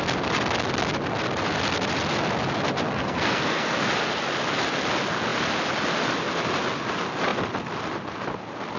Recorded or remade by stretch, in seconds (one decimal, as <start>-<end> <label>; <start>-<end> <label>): 0.0-3.0 recorded; 3.0-3.8 remade; 3.8-8.8 recorded